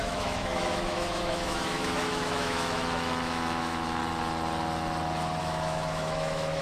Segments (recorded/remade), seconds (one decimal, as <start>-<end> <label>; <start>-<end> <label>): 0.0-4.0 remade; 4.0-5.4 recorded; 5.4-6.6 remade